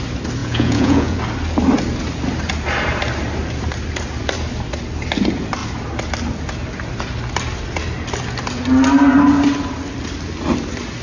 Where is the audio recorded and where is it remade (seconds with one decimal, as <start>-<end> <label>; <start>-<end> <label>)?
0.0-0.4 recorded; 0.4-1.2 remade; 1.2-11.0 recorded